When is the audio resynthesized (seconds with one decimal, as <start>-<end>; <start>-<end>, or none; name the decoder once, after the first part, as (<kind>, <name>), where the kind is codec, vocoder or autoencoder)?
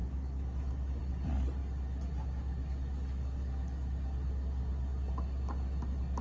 0.0-1.0 (autoencoder, DAC-VAE)